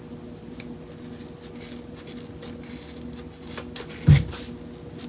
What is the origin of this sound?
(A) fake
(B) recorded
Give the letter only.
B